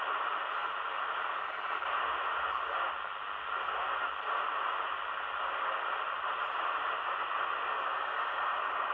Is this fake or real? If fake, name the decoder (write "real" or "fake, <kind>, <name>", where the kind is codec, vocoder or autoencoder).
real